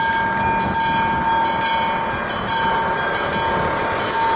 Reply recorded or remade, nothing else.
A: recorded